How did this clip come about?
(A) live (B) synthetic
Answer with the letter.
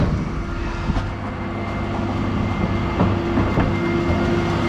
A